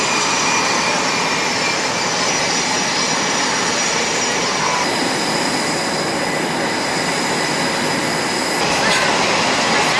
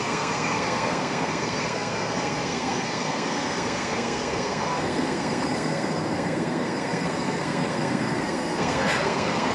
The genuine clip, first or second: first